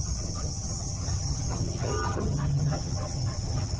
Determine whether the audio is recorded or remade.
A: remade